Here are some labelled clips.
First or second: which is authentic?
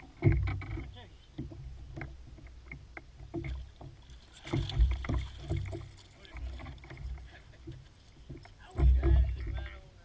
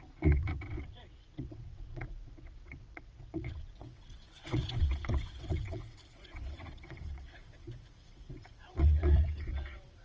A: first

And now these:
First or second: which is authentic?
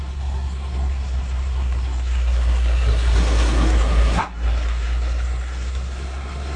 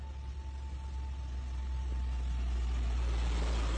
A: second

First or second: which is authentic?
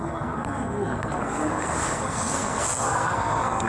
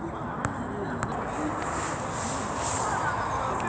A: second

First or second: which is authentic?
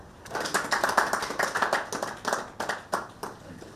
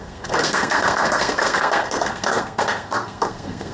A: first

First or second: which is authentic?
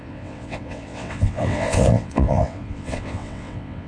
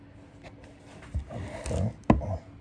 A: second